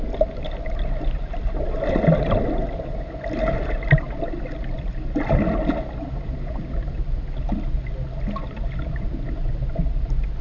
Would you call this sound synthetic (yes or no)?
no